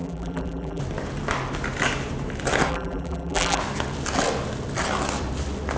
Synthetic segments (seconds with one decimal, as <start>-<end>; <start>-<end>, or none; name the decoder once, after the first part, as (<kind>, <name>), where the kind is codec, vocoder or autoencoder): 0.0-0.8 (vocoder, BigVGAN v2); 2.7-3.6